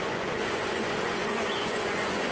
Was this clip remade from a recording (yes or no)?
yes